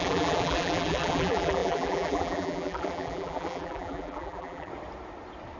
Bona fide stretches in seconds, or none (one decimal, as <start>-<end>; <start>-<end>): 4.7-5.6